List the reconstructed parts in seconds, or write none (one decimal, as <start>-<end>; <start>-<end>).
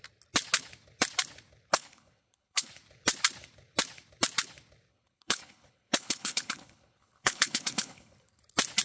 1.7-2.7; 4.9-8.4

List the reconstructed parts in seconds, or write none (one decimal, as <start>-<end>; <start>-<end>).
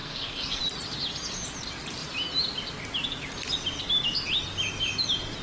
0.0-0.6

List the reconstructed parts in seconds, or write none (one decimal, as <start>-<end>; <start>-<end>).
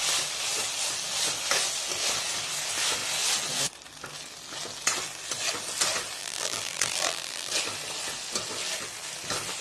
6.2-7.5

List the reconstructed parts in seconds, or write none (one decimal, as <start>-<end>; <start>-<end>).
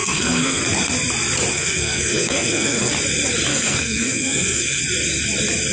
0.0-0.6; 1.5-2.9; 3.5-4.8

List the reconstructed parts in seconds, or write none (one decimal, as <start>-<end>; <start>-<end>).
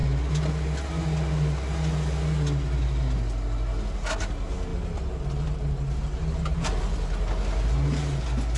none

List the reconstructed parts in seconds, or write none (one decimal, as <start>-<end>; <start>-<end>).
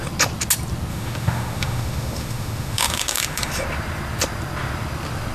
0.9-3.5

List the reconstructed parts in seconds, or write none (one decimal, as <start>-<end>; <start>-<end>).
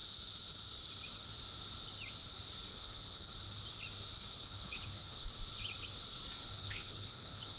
2.7-3.3; 4.4-5.3; 6.6-7.6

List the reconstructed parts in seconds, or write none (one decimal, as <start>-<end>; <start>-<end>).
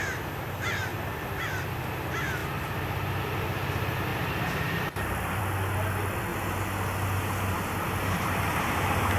4.1-5.4